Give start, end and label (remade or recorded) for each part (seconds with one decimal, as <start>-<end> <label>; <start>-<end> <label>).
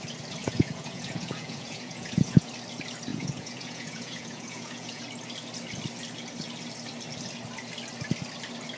0.0-0.4 recorded; 0.4-2.5 remade; 2.5-3.1 recorded; 3.1-5.0 remade; 5.0-8.8 recorded